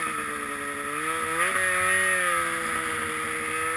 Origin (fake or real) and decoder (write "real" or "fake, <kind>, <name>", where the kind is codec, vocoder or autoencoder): real